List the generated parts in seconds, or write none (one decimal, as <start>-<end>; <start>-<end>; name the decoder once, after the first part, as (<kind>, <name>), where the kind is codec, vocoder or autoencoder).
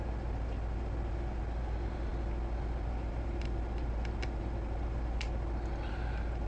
none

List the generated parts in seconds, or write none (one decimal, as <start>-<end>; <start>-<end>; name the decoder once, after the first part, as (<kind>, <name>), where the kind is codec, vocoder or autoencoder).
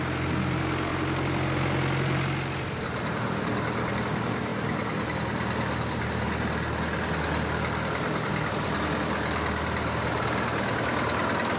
none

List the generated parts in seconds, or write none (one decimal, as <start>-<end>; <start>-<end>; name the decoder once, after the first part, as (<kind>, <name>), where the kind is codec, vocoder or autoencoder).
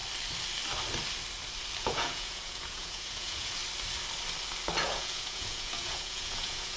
1.8-3.6 (vocoder, Vocos); 4.8-6.8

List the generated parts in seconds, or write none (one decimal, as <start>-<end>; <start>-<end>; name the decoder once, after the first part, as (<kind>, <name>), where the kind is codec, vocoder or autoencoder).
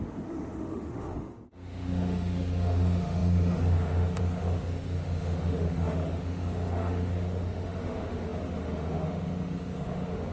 0.0-10.3 (autoencoder, DAC-VAE)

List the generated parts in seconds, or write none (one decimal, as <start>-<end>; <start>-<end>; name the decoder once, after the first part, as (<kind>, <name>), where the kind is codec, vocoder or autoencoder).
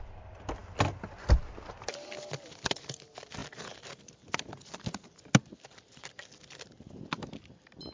none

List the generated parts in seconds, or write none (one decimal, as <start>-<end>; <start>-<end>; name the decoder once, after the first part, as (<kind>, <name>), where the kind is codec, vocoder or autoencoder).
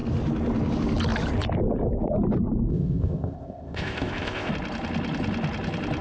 2.7-4.5 (codec, ZipCodec)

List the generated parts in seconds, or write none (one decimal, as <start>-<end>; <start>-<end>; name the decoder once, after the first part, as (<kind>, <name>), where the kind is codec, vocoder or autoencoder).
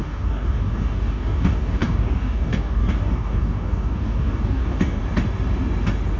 0.0-5.0 (codec, DAC)